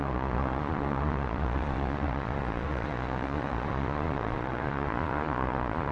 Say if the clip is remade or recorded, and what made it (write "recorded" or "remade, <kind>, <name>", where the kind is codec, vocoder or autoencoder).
remade, vocoder, Vocos